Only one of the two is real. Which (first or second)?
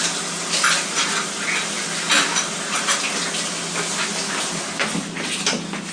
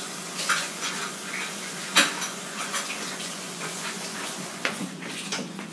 first